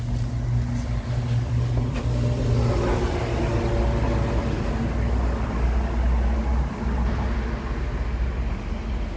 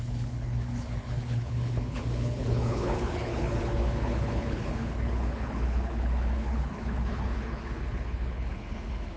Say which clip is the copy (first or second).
second